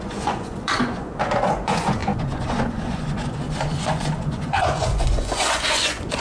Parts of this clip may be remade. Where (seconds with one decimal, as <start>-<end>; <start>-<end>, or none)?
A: 0.0-6.2

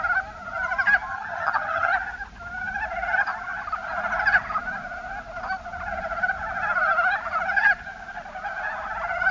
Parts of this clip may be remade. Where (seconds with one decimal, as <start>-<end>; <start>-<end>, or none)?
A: 1.1-1.9